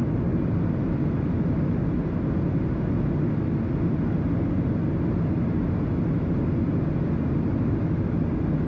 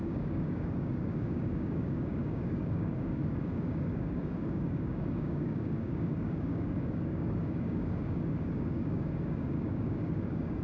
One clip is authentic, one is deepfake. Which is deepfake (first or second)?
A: second